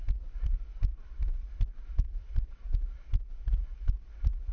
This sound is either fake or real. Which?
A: real